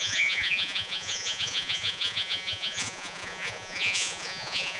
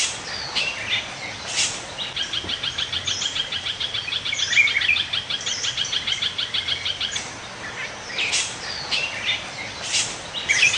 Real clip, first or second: second